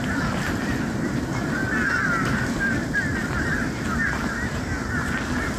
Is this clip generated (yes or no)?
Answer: no